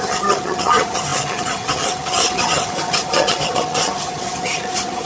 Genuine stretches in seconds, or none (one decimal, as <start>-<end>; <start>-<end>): none